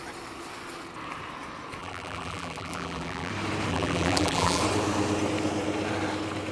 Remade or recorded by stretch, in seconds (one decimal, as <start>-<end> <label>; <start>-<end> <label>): 0.0-1.8 recorded; 1.8-3.3 remade; 3.3-3.7 recorded; 3.7-4.6 remade; 4.6-6.5 recorded